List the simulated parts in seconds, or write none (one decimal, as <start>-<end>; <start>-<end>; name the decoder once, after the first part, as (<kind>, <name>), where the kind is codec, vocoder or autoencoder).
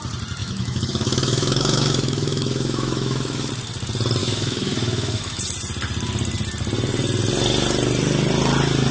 0.4-3.5 (autoencoder, DAC-VAE); 4.2-5.4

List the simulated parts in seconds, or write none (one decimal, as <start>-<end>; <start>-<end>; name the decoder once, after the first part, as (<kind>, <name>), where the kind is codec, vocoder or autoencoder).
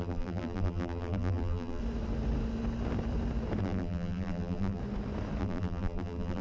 0.0-1.8 (vocoder, BigVGAN v2); 3.6-4.8; 5.4-6.4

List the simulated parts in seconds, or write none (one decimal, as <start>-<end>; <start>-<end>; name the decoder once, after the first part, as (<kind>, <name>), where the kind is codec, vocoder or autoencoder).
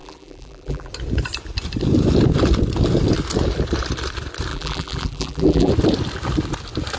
0.0-0.9 (vocoder, BigVGAN v2); 4.5-5.7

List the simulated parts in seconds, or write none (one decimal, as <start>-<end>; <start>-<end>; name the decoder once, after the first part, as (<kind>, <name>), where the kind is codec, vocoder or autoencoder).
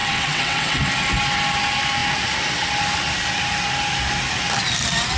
0.0-0.8 (vocoder, WaveNeXt)